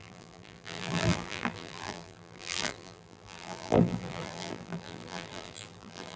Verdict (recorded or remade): remade